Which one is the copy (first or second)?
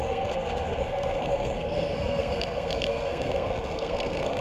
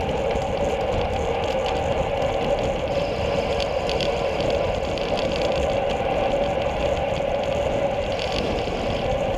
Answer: first